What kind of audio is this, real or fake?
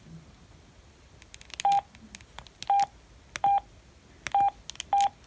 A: real